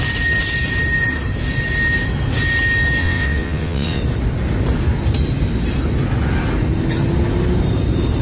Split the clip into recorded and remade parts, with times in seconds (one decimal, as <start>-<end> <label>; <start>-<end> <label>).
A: 0.0-3.0 recorded; 3.0-4.0 remade; 4.0-8.2 recorded